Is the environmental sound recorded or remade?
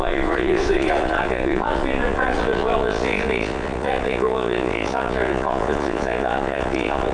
remade